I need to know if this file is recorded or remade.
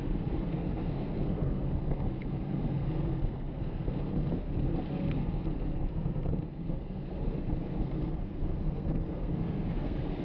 remade